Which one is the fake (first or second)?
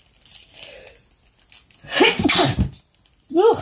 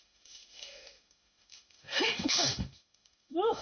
second